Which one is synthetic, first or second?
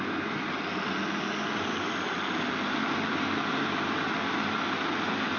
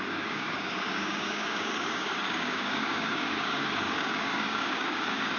second